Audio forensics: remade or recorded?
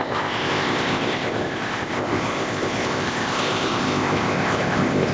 remade